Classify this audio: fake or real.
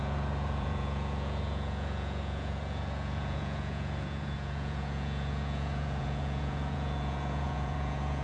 fake